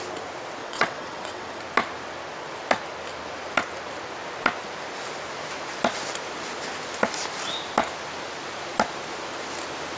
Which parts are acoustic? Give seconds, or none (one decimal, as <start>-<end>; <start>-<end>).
0.0-0.6; 1.6-10.0